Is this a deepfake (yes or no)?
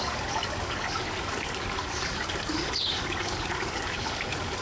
yes